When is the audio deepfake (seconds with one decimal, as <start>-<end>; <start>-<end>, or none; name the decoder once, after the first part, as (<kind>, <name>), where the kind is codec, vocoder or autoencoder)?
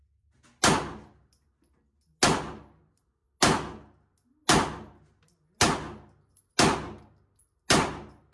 none